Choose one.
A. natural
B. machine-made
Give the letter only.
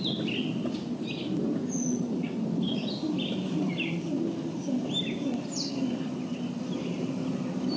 A